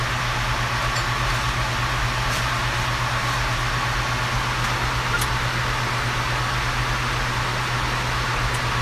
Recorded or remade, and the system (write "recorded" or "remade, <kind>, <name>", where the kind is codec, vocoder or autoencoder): recorded